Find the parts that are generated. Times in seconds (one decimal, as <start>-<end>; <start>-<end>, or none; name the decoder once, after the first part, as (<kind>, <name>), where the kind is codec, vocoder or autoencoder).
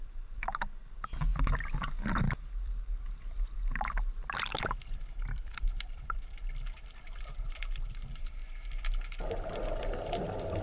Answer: 0.0-8.4 (vocoder, BigVGAN v2); 9.8-10.6